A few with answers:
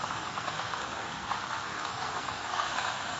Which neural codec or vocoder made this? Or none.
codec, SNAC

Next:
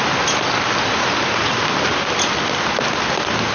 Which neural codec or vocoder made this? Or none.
none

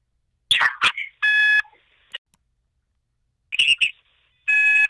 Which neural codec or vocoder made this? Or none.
none